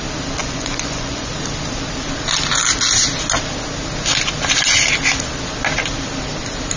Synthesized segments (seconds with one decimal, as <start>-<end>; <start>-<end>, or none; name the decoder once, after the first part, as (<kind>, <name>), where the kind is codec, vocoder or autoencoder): 0.4-1.3 (vocoder, Vocos)